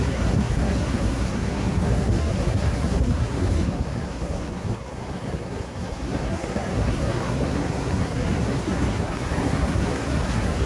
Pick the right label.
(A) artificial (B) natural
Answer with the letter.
A